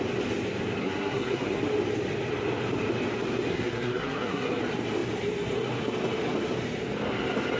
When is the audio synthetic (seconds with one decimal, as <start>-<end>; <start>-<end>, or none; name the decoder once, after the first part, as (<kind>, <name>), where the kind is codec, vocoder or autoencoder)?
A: 0.8-1.6 (codec, SNAC); 3.5-4.6